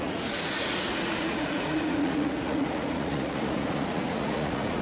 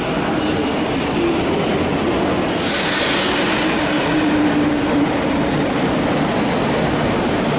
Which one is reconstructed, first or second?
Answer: first